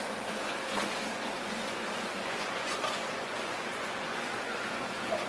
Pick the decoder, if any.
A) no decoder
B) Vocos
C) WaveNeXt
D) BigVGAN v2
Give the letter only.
B